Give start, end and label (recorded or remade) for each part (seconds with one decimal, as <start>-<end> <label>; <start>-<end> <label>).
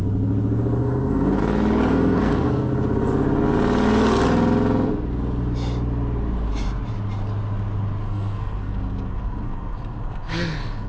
0.0-0.8 recorded; 0.8-1.4 remade; 1.4-1.9 recorded; 1.9-2.7 remade; 2.7-8.0 recorded; 8.0-10.9 remade